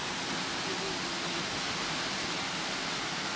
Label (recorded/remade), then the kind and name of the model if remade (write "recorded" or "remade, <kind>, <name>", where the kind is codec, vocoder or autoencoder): recorded